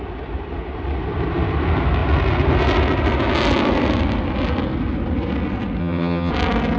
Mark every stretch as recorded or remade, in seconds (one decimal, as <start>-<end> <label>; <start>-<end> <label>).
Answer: 0.0-5.8 recorded; 5.8-6.3 remade; 6.3-6.8 recorded